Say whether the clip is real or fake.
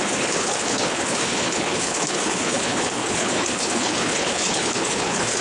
fake